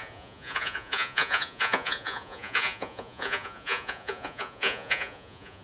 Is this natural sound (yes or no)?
no